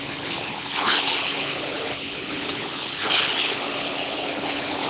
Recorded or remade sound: remade